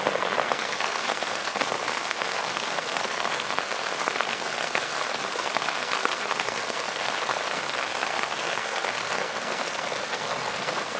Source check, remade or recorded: remade